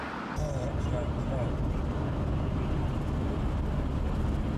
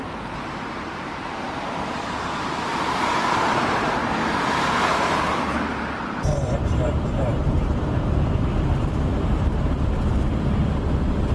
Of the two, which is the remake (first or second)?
second